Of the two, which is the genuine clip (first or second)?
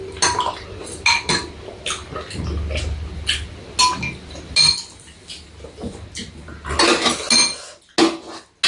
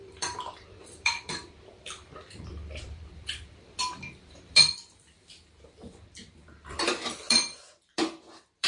first